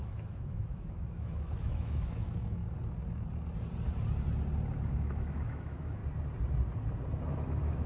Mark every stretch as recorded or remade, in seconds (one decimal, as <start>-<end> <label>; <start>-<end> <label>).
0.0-2.6 remade; 2.6-5.0 recorded; 5.0-6.0 remade; 6.0-7.2 recorded; 7.2-7.9 remade